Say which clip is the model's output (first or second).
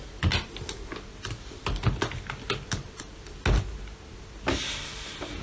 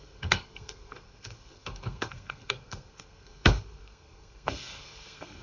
second